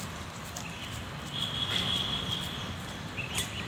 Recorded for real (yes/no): yes